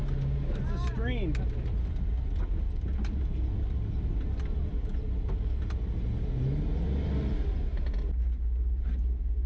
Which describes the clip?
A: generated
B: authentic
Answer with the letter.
B